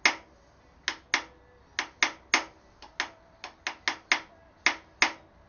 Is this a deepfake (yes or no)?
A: no